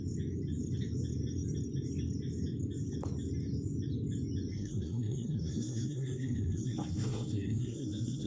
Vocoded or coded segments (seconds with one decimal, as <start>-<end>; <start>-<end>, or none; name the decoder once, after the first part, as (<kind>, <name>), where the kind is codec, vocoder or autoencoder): 4.5-8.3 (codec, SNAC)